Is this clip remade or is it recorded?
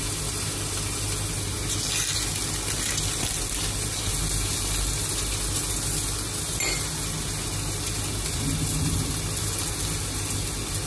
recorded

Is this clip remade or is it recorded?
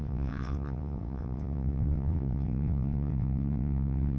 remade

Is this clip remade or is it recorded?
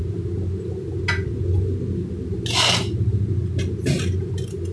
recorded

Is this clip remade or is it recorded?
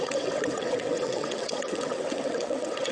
remade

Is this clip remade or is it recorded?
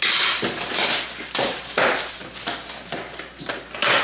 recorded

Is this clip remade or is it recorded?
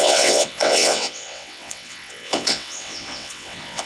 remade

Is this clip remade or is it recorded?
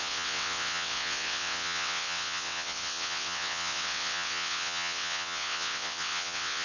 remade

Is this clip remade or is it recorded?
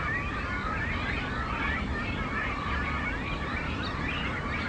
recorded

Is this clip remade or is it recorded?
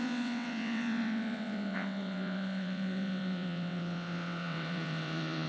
remade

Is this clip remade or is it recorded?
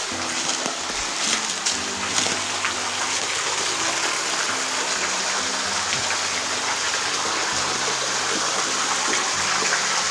recorded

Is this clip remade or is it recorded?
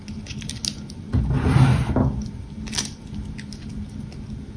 recorded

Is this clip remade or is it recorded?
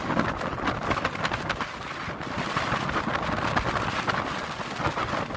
recorded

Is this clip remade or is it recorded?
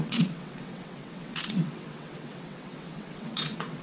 remade